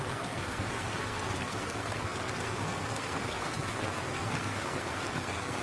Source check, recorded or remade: remade